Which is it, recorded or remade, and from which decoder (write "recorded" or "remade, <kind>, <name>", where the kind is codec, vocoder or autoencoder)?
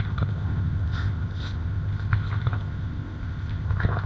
remade, codec, ZipCodec